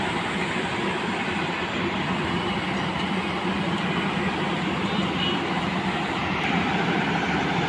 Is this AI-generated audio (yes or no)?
no